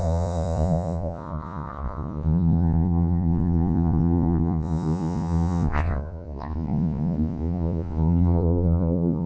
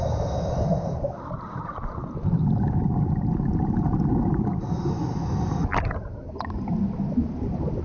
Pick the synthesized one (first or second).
first